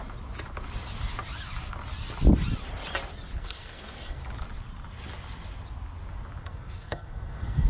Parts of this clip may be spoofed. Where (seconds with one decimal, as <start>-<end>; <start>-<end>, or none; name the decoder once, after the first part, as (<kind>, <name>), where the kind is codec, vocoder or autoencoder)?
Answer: 3.4-4.2 (codec, SNAC); 6.4-7.7